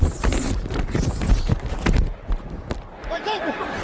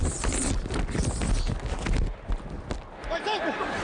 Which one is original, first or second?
second